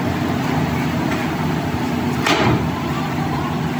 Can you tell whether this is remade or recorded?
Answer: recorded